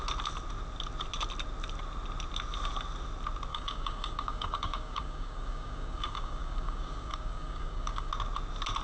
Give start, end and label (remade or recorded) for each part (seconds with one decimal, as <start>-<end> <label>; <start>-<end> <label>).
0.0-3.5 recorded; 3.5-8.1 remade; 8.1-8.8 recorded